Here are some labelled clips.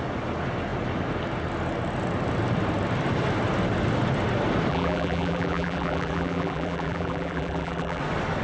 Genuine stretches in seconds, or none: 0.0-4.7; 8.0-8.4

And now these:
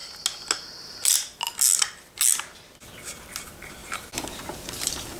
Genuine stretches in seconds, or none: 0.0-3.8